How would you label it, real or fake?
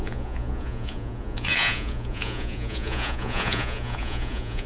fake